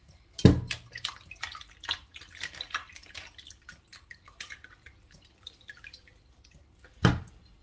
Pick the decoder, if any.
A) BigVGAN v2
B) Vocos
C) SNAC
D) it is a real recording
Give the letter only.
D